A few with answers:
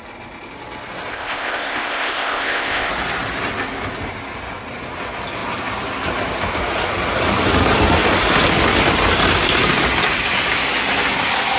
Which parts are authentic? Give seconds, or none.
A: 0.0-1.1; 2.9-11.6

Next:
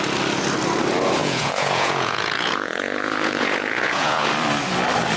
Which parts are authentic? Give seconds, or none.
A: 0.0-1.2; 4.3-5.2

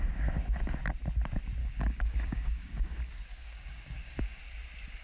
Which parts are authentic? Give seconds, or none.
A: 0.0-1.6; 4.4-5.0